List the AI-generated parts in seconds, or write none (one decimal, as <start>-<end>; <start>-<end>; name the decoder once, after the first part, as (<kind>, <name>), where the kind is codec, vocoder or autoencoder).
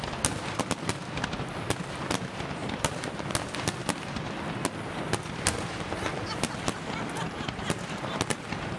2.6-3.3 (vocoder, BigVGAN v2)